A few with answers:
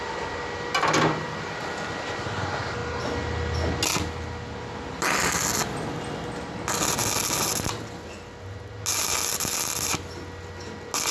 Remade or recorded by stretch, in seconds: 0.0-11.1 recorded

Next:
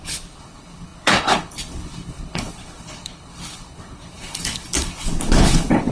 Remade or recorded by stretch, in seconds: 0.0-5.9 remade

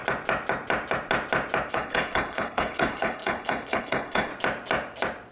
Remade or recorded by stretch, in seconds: 0.0-1.7 recorded; 1.7-4.3 remade; 4.3-5.3 recorded

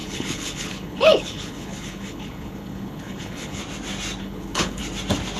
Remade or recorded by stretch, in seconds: 0.0-3.6 remade; 3.6-4.2 recorded; 4.2-4.8 remade; 4.8-5.4 recorded

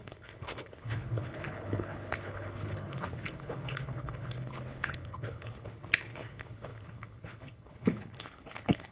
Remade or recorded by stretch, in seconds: 0.0-8.9 remade

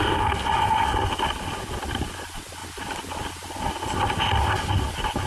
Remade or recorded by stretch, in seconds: 0.0-5.3 recorded

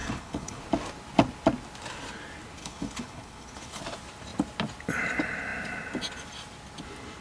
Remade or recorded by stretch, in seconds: 0.0-0.6 remade; 0.6-2.6 recorded; 2.6-3.8 remade; 3.8-7.2 recorded

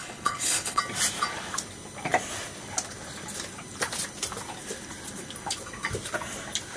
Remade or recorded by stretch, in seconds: 0.0-0.8 remade; 0.8-6.8 recorded